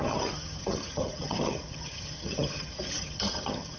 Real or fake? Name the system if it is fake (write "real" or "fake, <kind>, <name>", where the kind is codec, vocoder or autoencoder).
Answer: fake, vocoder, HiFi-GAN